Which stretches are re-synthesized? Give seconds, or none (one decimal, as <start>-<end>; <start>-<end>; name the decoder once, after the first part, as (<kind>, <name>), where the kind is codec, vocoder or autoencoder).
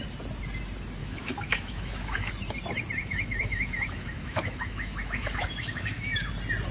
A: 1.0-2.3 (autoencoder, DAC-VAE); 3.0-6.3